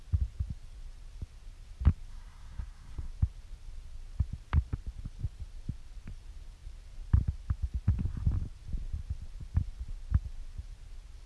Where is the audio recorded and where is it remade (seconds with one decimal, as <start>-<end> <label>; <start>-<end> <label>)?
0.0-2.1 recorded; 2.1-3.1 remade; 3.1-11.3 recorded